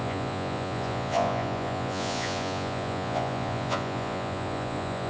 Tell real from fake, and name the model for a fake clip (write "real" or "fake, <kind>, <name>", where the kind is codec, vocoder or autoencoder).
fake, vocoder, Vocos